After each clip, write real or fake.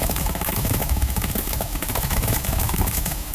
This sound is fake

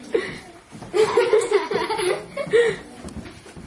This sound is fake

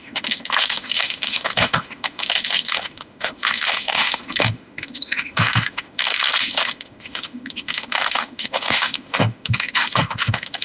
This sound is fake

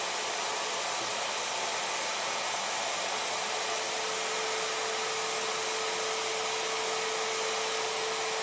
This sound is real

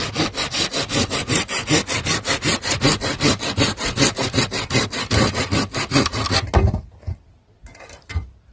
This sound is real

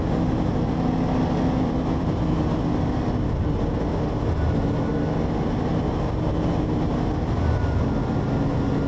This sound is real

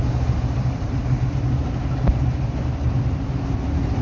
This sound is real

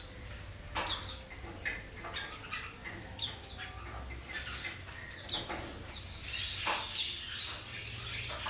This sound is real